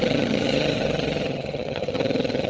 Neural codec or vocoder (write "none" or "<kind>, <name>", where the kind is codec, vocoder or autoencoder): vocoder, HiFi-GAN